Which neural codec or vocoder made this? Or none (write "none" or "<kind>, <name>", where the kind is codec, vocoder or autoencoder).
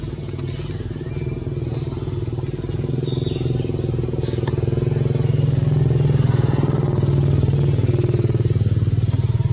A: none